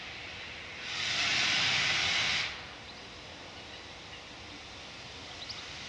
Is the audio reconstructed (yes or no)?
no